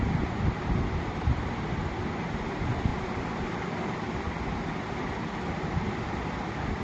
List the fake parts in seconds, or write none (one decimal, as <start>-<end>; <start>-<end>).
none